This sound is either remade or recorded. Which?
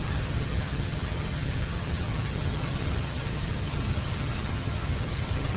remade